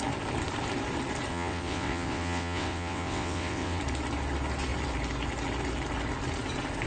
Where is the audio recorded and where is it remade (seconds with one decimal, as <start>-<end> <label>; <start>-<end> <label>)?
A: 0.0-1.3 recorded; 1.3-3.8 remade; 3.8-6.9 recorded